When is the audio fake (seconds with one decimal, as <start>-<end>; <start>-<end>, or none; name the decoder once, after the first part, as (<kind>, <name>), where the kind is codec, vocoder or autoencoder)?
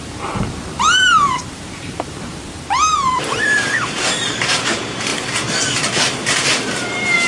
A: 0.0-5.1 (vocoder, BigVGAN v2); 5.9-7.3